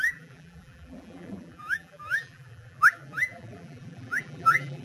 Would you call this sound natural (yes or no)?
no